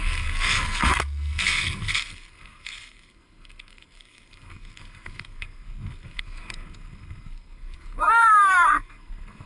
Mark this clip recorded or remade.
remade